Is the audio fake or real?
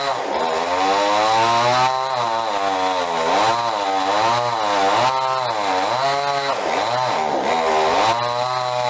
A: real